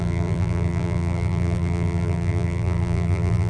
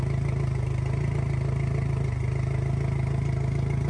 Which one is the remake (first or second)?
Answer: first